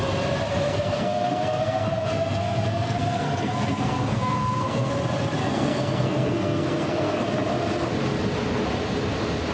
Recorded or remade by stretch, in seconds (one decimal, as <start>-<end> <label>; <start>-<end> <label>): 0.0-0.5 recorded; 0.5-4.9 remade; 4.9-5.4 recorded; 5.4-7.2 remade; 7.2-9.5 recorded